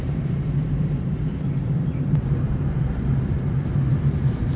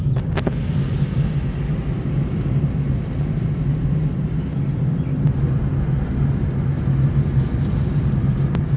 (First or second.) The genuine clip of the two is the second